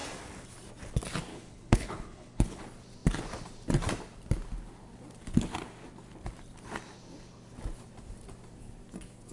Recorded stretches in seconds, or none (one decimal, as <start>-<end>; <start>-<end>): 0.0-1.3; 2.6-9.3